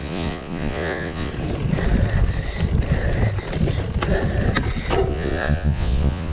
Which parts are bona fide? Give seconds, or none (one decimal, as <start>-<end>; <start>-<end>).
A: 1.3-5.1